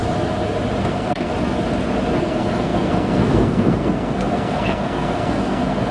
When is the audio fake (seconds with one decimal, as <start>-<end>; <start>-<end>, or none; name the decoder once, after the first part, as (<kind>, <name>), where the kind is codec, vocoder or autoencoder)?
0.8-1.3 (codec, SNAC); 2.2-5.9